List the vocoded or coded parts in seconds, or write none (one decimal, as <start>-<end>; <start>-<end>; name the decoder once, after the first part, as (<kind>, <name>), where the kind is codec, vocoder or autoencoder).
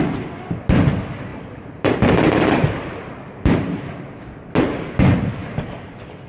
1.3-3.9 (vocoder, BigVGAN v2)